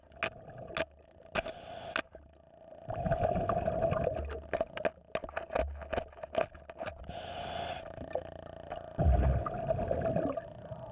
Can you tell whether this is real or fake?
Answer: real